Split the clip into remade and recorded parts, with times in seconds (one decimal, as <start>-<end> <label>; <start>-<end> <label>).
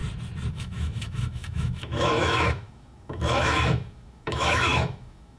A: 0.0-0.5 recorded; 0.5-5.4 remade